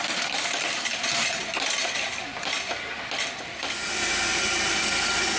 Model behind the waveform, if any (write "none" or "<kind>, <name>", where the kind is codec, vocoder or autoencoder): none